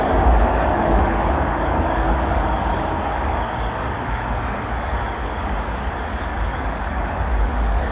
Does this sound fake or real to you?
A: fake